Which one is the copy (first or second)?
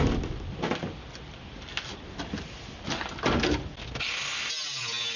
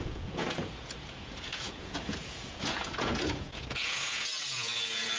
second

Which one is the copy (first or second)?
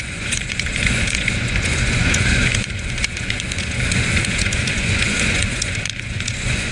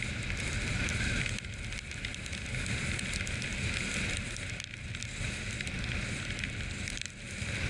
first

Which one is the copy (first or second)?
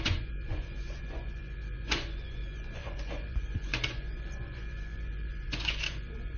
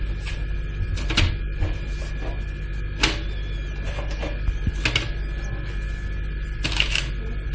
first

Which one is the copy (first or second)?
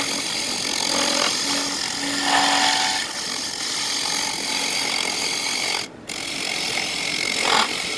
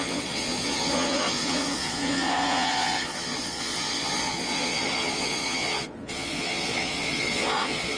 second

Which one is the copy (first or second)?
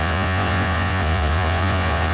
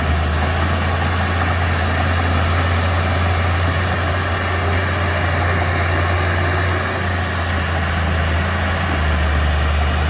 first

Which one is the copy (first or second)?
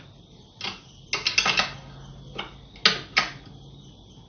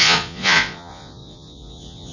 second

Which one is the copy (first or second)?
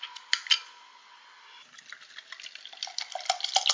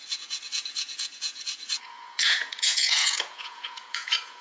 second